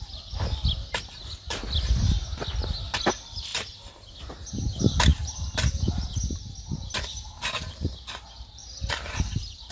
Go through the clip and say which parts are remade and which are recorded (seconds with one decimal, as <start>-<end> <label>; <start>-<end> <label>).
0.0-9.7 recorded